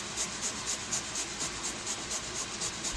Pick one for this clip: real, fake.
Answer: real